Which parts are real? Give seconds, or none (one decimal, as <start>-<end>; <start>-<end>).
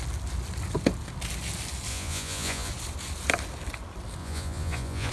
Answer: 0.0-1.9; 2.7-4.2